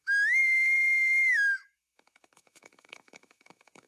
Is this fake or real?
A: fake